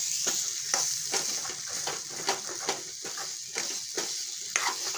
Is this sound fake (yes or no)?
no